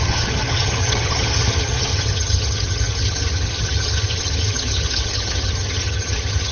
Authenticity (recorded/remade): remade